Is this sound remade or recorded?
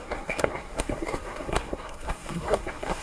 remade